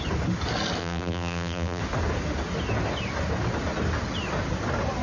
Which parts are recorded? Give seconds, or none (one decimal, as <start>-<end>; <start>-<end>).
0.0-0.8; 1.8-5.0